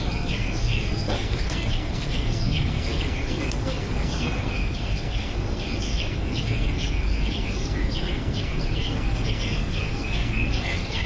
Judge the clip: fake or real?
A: fake